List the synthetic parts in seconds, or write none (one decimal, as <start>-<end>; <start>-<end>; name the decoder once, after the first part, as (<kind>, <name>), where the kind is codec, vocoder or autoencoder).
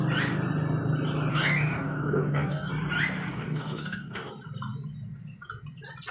1.3-2.7 (codec, DAC); 3.3-4.3